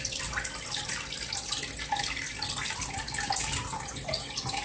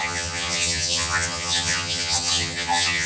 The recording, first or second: first